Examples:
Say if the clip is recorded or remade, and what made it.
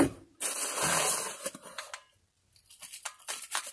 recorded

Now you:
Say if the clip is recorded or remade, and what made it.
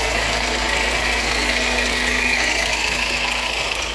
remade, codec, SNAC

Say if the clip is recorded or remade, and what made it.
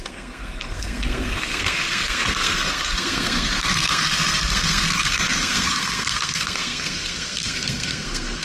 remade, codec, SNAC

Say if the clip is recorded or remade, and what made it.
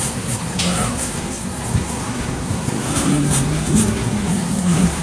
remade, codec, SNAC